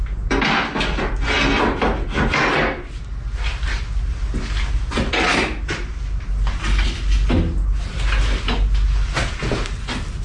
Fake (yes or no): no